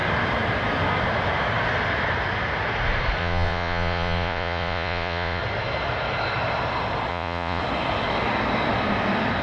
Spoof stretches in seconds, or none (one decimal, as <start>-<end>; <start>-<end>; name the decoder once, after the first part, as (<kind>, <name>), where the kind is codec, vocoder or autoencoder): 3.2-5.4 (vocoder, Vocos); 7.1-7.6